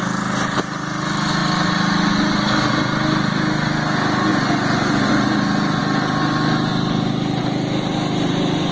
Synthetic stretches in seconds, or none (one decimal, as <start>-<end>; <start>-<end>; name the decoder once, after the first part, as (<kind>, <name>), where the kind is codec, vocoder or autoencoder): 4.3-5.1 (vocoder, Vocos)